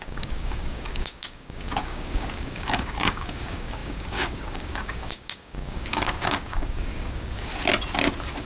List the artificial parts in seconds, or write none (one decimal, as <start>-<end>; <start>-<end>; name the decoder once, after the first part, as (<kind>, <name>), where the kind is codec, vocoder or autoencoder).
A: 0.0-7.5 (codec, DAC)